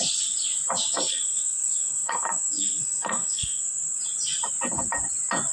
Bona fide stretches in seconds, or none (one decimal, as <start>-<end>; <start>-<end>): 0.0-1.1; 4.0-5.5